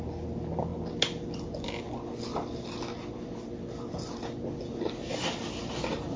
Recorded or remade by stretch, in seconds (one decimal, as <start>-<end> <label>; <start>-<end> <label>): 0.0-6.2 recorded